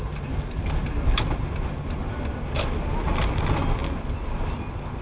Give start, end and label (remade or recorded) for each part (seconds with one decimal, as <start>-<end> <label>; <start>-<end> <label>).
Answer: 0.0-5.0 recorded